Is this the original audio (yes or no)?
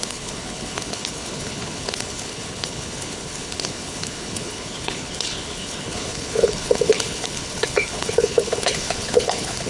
no